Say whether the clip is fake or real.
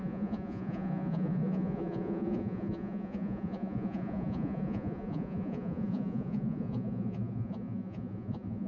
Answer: fake